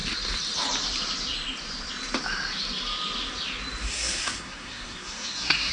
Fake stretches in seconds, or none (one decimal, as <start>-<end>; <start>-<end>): 3.9-5.7